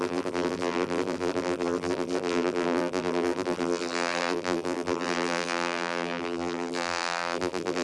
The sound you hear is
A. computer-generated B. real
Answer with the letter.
A